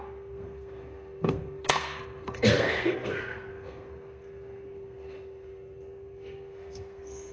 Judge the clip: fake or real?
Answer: fake